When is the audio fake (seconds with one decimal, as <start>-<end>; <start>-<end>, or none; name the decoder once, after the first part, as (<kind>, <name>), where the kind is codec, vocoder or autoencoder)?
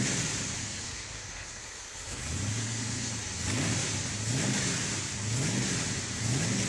0.6-2.2 (codec, SNAC); 2.6-3.1